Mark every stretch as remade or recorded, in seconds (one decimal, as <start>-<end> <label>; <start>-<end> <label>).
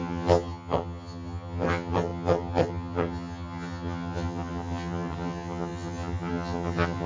0.0-7.1 remade